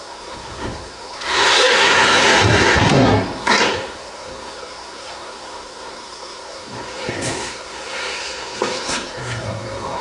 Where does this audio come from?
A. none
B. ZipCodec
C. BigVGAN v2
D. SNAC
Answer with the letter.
D